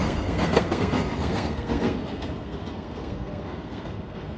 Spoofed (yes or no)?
yes